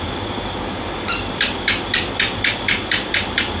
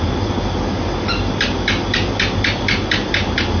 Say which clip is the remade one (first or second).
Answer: first